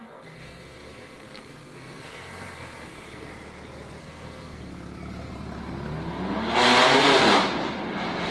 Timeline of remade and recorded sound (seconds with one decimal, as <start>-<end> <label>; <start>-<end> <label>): 0.0-3.3 remade; 3.3-4.0 recorded; 4.0-4.7 remade; 4.7-8.3 recorded